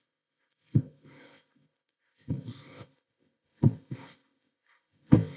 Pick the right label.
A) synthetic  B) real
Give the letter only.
A